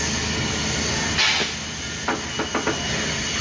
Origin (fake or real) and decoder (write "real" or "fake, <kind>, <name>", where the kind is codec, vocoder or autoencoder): real